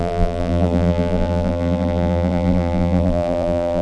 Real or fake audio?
fake